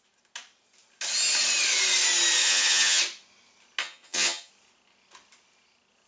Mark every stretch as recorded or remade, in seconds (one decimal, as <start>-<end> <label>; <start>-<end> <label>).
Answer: 0.0-2.4 recorded; 2.4-3.0 remade; 3.0-3.8 recorded; 3.8-4.5 remade; 4.5-6.1 recorded